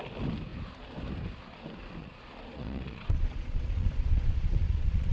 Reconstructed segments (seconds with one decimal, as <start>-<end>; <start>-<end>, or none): 2.0-5.1